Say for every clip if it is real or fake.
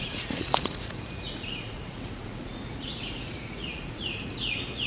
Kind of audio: fake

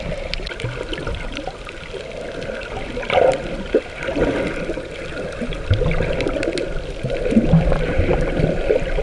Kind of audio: real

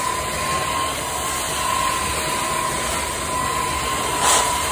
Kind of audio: real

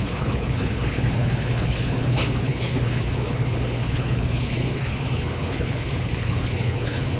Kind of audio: fake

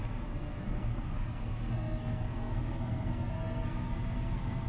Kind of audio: fake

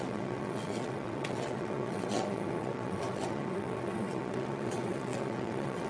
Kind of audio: fake